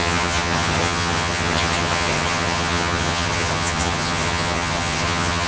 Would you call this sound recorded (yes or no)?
no